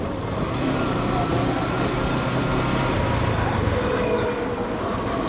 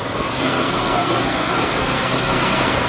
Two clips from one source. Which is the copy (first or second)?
second